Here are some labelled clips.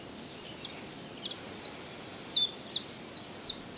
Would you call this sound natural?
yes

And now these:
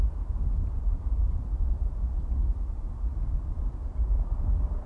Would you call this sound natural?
no